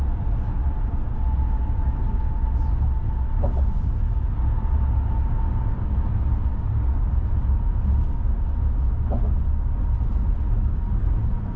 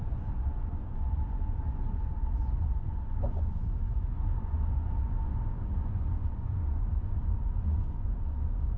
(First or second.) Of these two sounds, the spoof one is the second